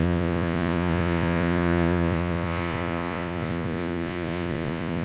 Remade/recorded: remade